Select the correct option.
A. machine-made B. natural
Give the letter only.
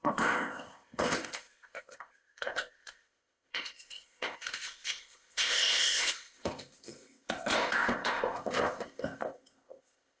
A